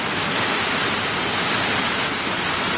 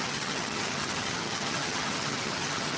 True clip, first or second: first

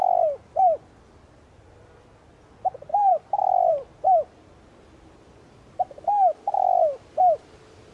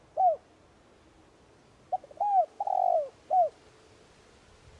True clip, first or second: second